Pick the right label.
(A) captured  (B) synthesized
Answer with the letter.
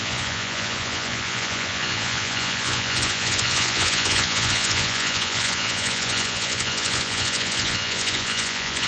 B